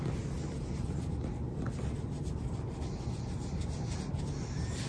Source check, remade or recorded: recorded